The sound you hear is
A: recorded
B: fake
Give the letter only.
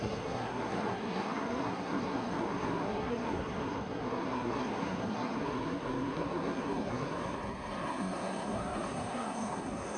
B